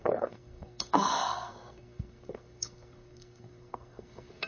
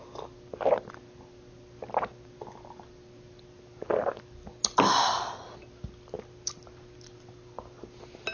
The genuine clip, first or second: second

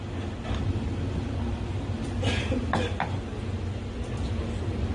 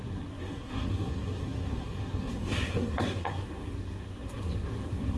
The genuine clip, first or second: first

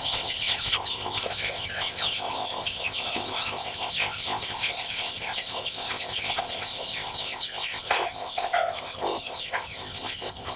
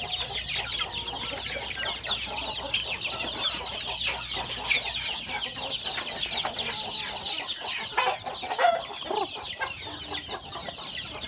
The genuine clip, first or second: second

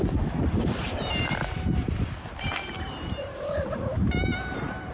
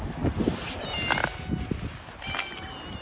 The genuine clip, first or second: second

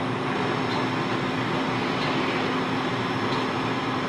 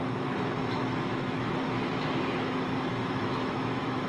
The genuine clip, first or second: first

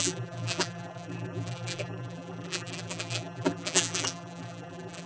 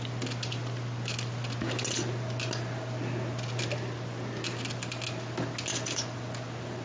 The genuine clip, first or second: second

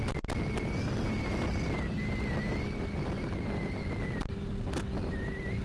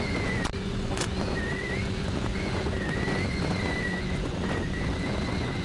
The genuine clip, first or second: first